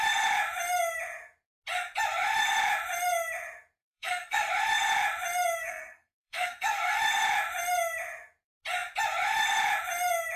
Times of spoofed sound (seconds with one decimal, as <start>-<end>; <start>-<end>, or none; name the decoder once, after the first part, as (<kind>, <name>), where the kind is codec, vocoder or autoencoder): 3.8-4.5 (codec, SNAC); 5.6-7.0